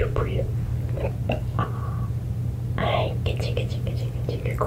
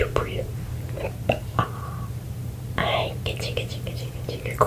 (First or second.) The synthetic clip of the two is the second